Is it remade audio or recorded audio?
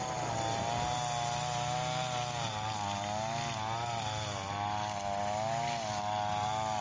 recorded